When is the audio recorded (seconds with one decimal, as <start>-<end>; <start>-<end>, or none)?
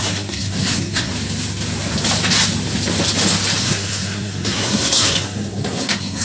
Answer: 1.1-3.6